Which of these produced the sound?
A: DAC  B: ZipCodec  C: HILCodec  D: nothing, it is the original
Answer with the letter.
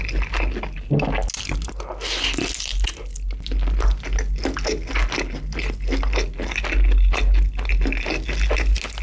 D